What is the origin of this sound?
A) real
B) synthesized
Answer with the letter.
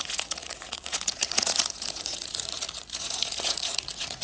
B